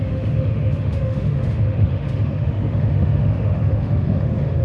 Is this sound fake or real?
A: fake